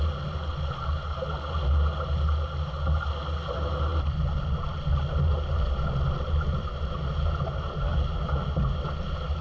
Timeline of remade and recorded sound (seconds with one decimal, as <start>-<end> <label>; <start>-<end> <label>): 0.0-9.4 recorded